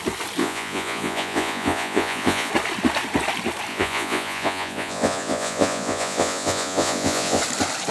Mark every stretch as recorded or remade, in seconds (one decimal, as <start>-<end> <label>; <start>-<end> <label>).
0.0-0.4 recorded; 0.4-2.5 remade; 2.5-3.7 recorded; 3.7-7.4 remade; 7.4-7.9 recorded